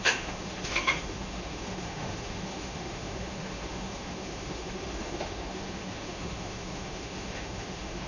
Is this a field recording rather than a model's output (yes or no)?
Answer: no